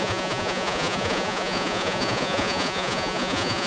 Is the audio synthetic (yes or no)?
yes